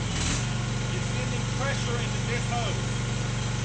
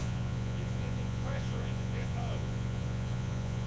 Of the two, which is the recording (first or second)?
first